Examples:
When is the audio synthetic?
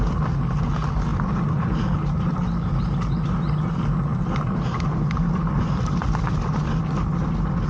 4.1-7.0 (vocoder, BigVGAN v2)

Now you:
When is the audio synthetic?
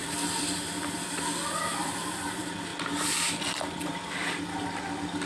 0.0-2.7 (vocoder, BigVGAN v2); 3.6-4.2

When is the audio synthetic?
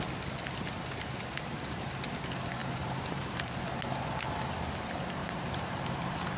2.6-3.6 (vocoder, BigVGAN v2); 5.2-6.4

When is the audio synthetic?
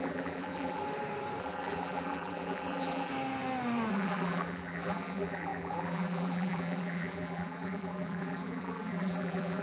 0.0-0.8 (vocoder, BigVGAN v2); 1.4-3.1; 3.9-9.6